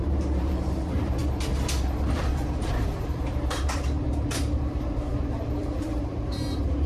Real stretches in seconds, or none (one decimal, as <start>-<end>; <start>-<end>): 1.2-2.3